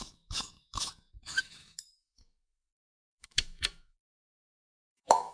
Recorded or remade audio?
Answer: remade